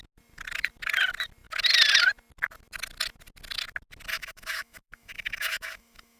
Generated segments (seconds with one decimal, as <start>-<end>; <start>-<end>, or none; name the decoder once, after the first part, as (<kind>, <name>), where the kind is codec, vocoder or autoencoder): 4.1-6.2 (autoencoder, DAC-VAE)